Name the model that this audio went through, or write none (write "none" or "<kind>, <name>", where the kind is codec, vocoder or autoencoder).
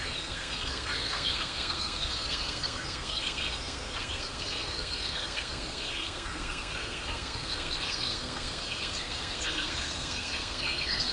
codec, SNAC